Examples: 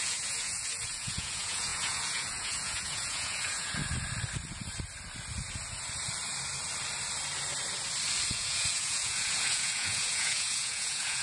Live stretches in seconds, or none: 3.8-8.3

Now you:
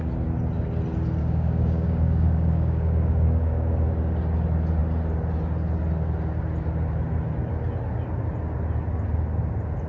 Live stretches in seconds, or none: 0.0-1.2; 3.7-9.9

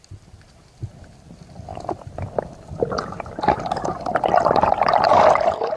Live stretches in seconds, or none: 0.0-1.7; 5.2-5.8

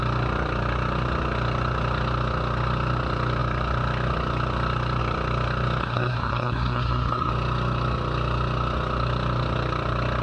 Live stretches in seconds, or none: 0.0-5.8; 7.3-10.2

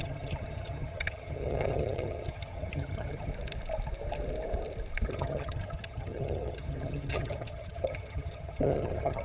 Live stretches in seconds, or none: 3.3-5.1

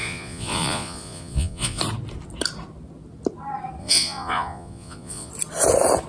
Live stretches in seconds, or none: 1.8-3.8; 5.3-6.1